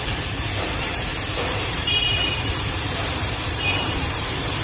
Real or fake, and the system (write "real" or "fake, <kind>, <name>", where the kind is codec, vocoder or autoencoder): fake, vocoder, BigVGAN v2